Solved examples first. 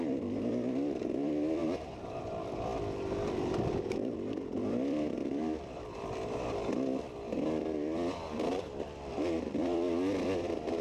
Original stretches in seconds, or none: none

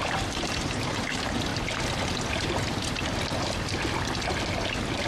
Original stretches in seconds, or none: 1.5-2.3; 3.0-5.1

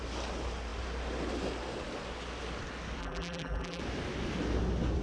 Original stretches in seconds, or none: 0.0-3.0; 3.8-5.0

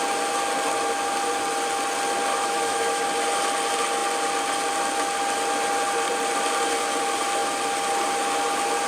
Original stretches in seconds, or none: 0.0-2.3; 3.0-8.9

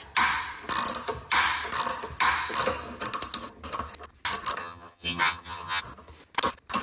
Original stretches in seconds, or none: 0.0-4.6; 5.8-6.8

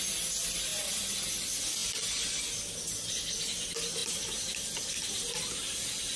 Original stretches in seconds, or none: 0.0-4.0; 4.9-6.2

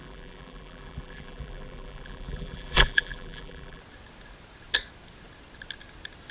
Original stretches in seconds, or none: 3.8-6.3

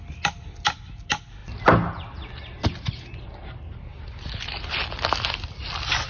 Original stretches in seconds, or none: 0.0-6.1